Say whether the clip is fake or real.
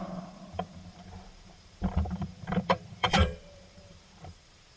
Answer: fake